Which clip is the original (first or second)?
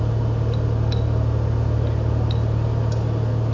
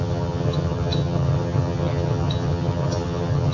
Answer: first